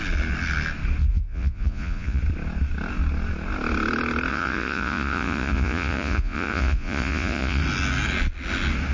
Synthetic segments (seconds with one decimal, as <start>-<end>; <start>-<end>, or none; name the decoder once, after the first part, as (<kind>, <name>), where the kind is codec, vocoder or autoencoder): 1.0-2.2 (vocoder, Vocos); 4.3-7.6